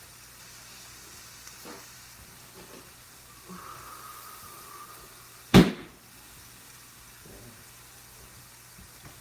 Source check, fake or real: real